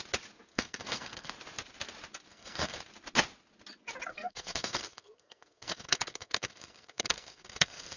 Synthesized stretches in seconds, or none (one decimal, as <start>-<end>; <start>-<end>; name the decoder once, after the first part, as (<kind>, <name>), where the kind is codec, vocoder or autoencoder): 0.5-1.3 (codec, SNAC); 2.3-2.8; 4.1-8.0